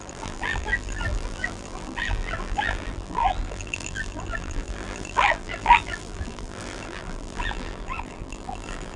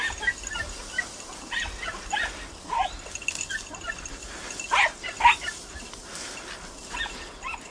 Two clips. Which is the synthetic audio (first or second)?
first